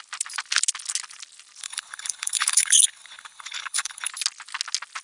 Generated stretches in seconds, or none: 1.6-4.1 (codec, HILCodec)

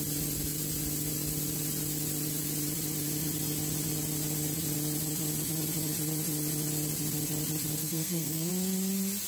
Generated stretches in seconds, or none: 7.8-8.5 (codec, SNAC)

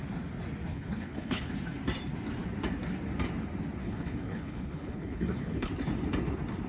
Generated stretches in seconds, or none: 0.7-1.5 (codec, HILCodec); 3.8-5.7

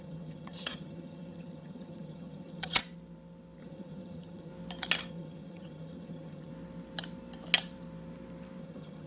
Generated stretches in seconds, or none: 0.0-2.8 (vocoder, HiFi-GAN); 3.6-4.5; 5.1-6.5; 8.6-9.1

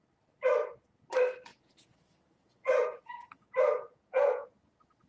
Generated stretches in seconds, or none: 0.5-1.0 (vocoder, Vocos); 1.5-4.6

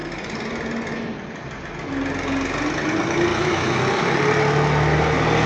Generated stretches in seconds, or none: 3.3-3.8 (autoencoder, DAC-VAE)

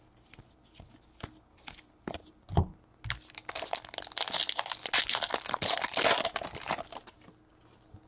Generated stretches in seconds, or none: none

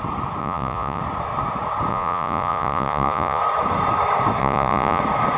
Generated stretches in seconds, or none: 0.4-1.0 (vocoder, Vocos); 1.9-3.4; 4.4-5.0